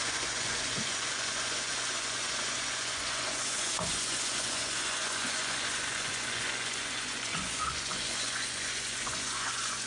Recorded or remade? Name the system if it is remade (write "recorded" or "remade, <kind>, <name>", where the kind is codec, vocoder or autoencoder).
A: remade, vocoder, Vocos